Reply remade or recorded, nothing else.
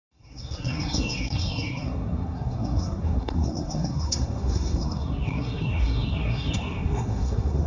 remade